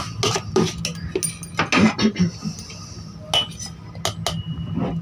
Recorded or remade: recorded